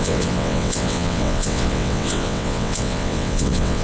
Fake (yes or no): yes